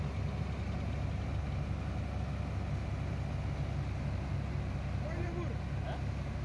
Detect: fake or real real